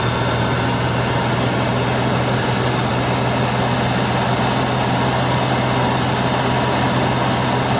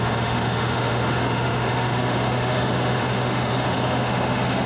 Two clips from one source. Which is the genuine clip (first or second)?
first